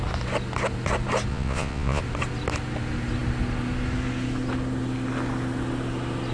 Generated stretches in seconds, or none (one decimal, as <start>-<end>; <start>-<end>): 1.3-2.0